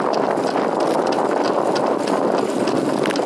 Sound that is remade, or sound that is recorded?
recorded